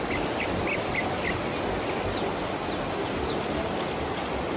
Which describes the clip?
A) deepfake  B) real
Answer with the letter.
B